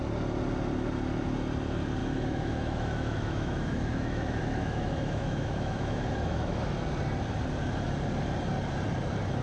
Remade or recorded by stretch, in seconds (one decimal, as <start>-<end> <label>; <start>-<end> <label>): 0.0-2.0 recorded; 2.0-6.7 remade; 6.7-9.4 recorded